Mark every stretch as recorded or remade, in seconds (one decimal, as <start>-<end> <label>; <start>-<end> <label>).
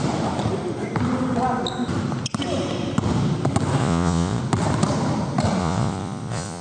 0.0-3.8 recorded; 3.8-4.4 remade; 4.4-5.6 recorded; 5.6-6.6 remade